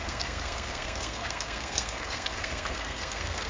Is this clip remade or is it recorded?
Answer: remade